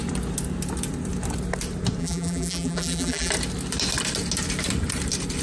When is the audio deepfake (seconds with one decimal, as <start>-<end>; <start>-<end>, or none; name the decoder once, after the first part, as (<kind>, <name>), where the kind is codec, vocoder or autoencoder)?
2.0-3.3 (vocoder, BigVGAN v2)

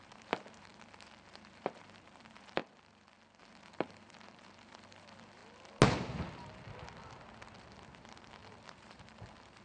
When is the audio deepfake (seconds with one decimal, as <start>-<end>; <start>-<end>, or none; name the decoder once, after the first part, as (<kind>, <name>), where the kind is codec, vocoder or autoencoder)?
0.0-0.7 (vocoder, BigVGAN v2); 1.3-2.6; 3.4-5.4; 8.0-9.6

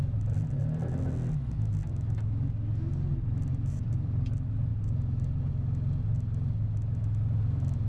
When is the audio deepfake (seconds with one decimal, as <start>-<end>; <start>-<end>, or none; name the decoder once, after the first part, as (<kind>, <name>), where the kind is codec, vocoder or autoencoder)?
3.1-4.3 (vocoder, BigVGAN v2); 4.7-5.5

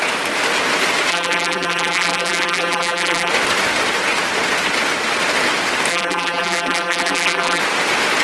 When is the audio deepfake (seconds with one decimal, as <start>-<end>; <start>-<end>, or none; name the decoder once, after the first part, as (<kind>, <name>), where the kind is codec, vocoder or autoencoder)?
1.1-3.3 (vocoder, BigVGAN v2); 5.9-7.6